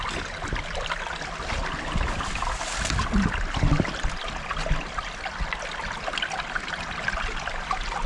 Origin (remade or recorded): recorded